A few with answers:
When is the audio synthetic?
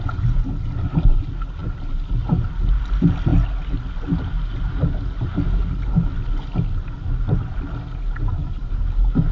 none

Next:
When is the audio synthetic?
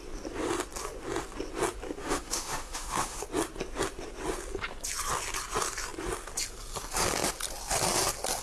2.0-3.2 (autoencoder, DAC-VAE)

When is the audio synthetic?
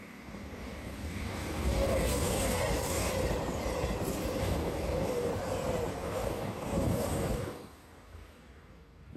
0.0-3.1 (codec, DAC); 4.4-5.3; 5.9-9.2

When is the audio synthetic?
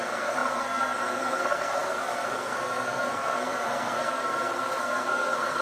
0.0-5.6 (codec, SNAC)